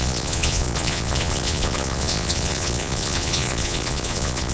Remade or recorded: remade